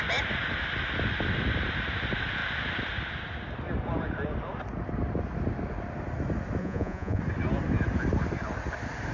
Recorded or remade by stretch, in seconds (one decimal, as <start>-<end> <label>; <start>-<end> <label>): 0.0-6.6 recorded; 6.6-7.2 remade; 7.2-9.1 recorded